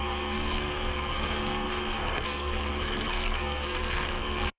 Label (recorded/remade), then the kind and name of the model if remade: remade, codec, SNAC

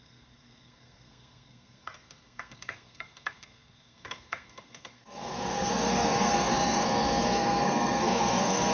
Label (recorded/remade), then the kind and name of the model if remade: remade, codec, SNAC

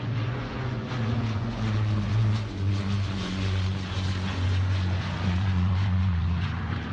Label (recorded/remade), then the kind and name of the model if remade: remade, vocoder, Vocos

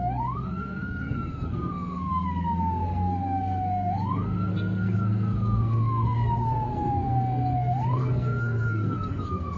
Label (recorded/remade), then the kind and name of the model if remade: remade, codec, SNAC